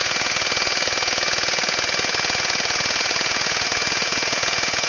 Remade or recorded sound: remade